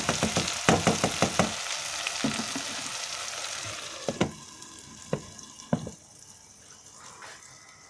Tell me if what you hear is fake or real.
real